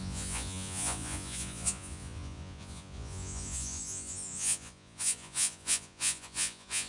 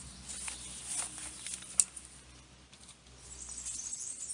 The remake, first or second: first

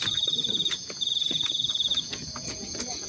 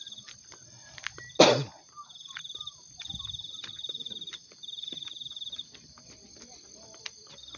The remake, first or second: first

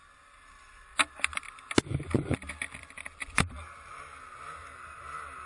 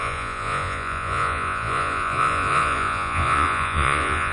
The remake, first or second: second